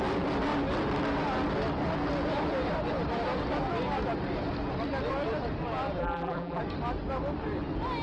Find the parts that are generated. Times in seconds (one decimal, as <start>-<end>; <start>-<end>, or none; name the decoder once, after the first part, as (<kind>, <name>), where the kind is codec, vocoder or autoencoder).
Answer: 6.0-6.6 (vocoder, BigVGAN v2)